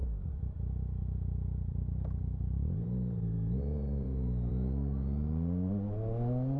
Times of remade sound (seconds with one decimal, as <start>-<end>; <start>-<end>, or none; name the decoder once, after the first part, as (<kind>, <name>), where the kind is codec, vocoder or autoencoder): 1.0-4.5 (vocoder, BigVGAN v2)

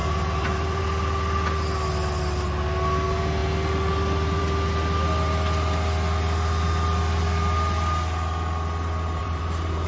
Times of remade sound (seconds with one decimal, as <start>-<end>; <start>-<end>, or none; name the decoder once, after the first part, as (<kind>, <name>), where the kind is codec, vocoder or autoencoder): 0.0-0.8 (vocoder, BigVGAN v2); 9.2-9.9

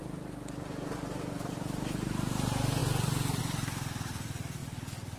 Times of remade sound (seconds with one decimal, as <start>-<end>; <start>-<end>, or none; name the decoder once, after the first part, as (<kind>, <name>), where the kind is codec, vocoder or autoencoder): 1.5-2.8 (vocoder, BigVGAN v2); 3.4-4.6